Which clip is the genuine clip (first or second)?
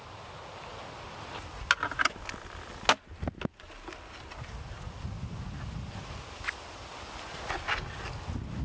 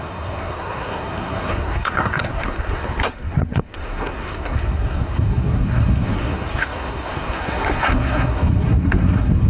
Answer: first